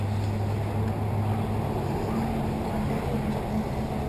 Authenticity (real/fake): real